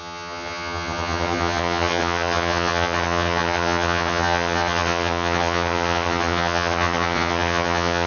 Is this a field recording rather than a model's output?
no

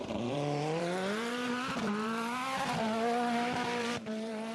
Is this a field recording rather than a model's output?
no